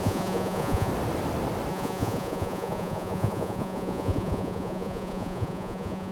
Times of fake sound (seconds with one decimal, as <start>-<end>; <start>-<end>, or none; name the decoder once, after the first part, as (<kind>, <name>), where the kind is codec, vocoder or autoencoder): 0.0-0.9 (vocoder, Vocos); 1.7-6.1